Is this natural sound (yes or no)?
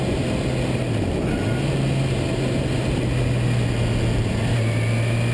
yes